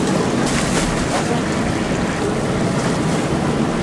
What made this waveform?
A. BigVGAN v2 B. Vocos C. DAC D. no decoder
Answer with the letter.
A